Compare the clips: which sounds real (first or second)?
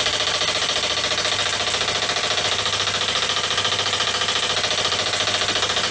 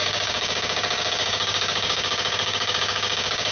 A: first